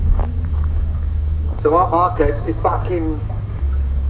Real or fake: fake